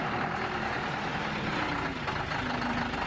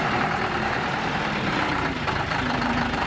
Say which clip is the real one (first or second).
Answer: first